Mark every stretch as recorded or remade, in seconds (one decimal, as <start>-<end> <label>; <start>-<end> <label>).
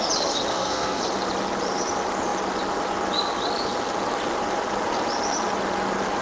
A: 0.0-0.5 recorded; 0.5-1.0 remade; 1.0-6.2 recorded